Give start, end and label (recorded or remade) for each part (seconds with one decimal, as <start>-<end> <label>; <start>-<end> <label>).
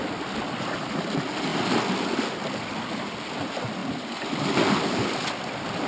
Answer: 0.0-5.9 recorded